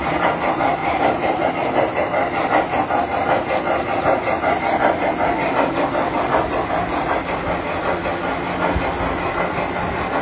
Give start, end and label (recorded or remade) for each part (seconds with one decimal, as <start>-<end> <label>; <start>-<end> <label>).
0.0-0.8 recorded; 0.8-1.5 remade; 1.5-10.2 recorded